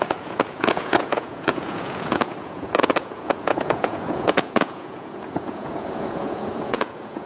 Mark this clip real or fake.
fake